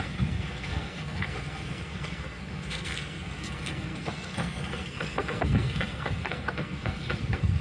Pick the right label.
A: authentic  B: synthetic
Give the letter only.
B